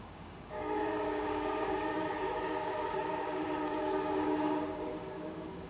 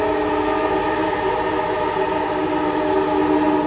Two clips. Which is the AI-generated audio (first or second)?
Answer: first